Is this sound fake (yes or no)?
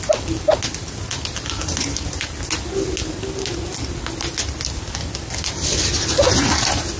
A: no